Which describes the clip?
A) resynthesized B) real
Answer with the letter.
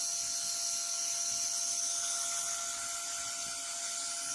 B